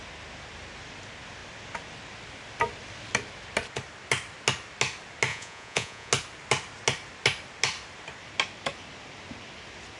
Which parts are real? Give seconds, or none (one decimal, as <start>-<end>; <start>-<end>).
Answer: 0.0-5.3; 6.1-10.0